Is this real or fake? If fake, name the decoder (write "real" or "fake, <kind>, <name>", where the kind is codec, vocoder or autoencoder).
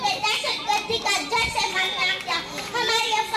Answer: real